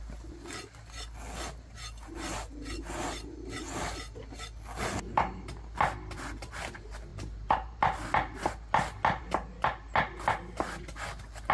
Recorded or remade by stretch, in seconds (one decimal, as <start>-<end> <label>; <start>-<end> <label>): 0.0-11.5 recorded